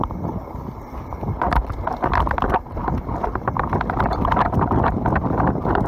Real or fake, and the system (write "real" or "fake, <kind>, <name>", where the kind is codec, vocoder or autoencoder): real